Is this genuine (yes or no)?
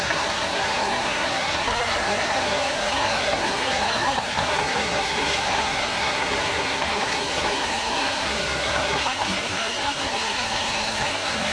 no